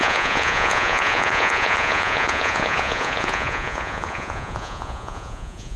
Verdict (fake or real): fake